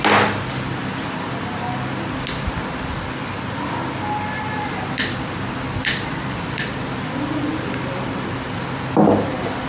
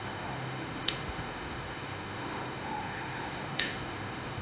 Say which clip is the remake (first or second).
second